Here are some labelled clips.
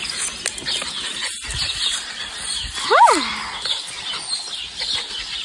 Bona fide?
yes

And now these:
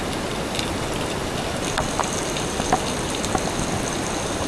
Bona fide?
yes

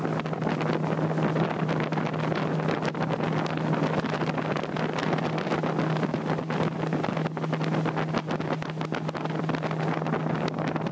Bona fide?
yes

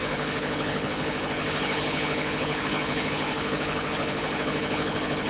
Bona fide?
no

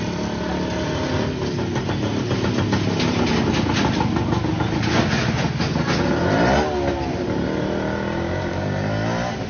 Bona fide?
yes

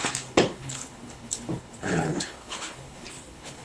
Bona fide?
no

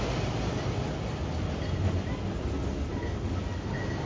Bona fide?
yes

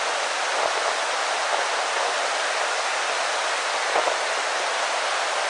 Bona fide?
yes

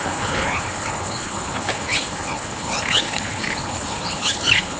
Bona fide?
no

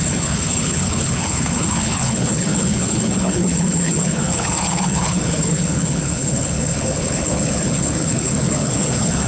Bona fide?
no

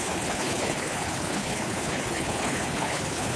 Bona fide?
no